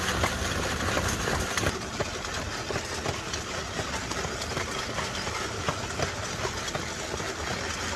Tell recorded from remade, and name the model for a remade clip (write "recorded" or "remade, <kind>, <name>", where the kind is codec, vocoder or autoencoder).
recorded